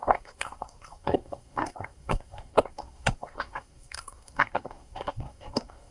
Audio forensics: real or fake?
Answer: fake